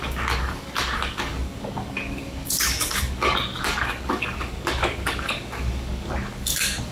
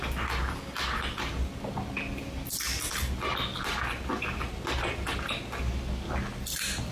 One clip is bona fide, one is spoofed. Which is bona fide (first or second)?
second